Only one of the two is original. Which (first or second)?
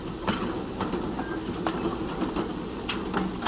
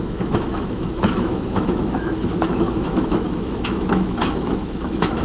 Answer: first